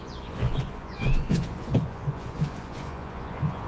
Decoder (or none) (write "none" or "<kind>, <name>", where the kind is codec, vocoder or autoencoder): vocoder, Vocos